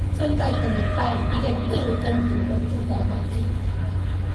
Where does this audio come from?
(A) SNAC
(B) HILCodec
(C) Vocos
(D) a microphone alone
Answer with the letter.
B